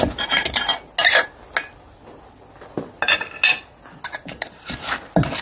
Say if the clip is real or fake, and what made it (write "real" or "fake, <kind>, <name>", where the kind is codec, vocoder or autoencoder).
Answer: real